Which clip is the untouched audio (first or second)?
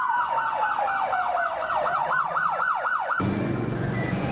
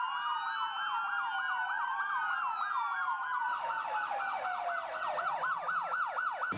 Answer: second